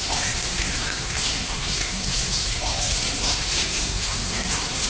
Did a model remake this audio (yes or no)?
yes